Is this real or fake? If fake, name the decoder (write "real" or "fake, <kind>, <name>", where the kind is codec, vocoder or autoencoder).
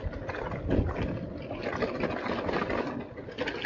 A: real